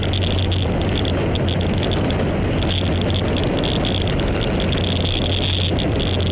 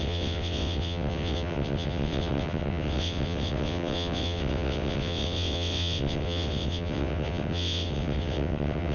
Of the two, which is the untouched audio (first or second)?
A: first